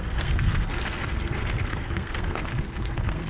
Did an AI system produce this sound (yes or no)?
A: yes